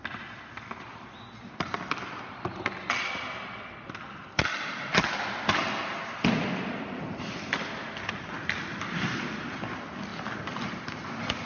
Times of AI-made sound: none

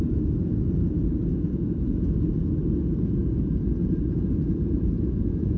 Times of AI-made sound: 0.0-5.6 (vocoder, Vocos)

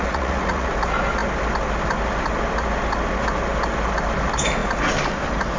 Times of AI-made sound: 0.0-0.7 (vocoder, Vocos)

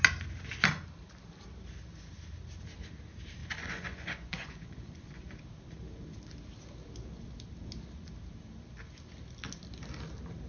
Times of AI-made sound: 3.4-5.2 (vocoder, Vocos)

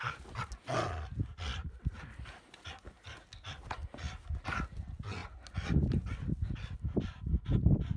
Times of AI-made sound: none

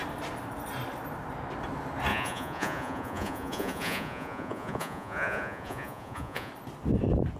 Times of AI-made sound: 2.1-6.5 (vocoder, Vocos)

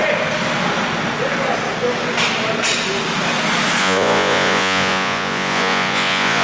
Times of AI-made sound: 3.8-6.4 (vocoder, Vocos)